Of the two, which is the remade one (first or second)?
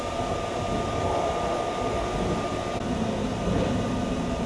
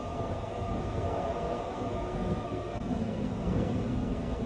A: second